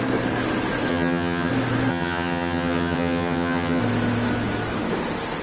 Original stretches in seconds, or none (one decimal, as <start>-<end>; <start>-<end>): 0.0-0.9; 1.5-1.9; 3.8-5.4